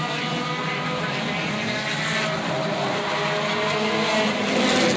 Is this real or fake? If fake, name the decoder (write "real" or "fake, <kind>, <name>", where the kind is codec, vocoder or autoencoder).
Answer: real